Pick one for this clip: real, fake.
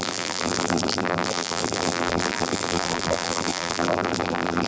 fake